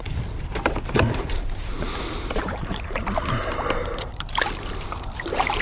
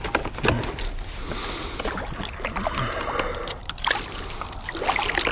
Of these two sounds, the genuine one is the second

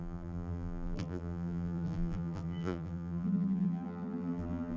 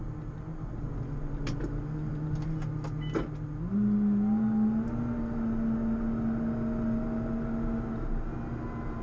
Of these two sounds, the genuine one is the second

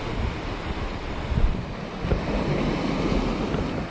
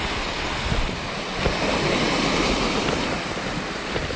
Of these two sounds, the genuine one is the first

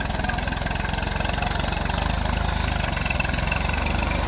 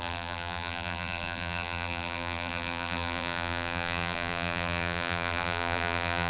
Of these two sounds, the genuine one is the first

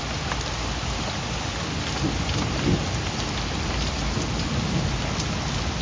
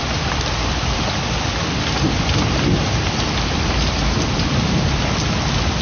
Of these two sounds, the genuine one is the first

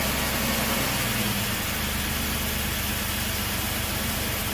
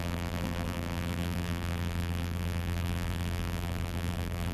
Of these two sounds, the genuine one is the first